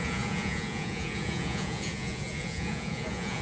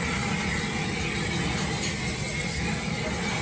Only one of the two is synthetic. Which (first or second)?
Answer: first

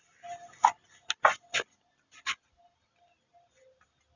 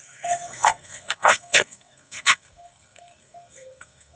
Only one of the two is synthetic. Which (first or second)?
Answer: second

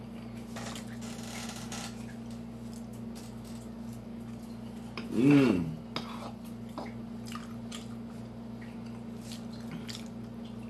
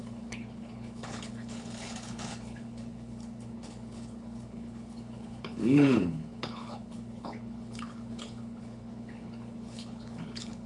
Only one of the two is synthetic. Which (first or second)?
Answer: second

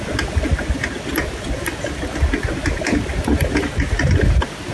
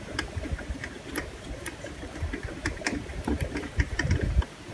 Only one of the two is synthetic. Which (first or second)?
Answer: second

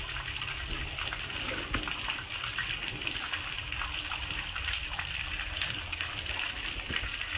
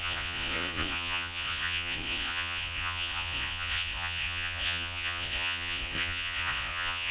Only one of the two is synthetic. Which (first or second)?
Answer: second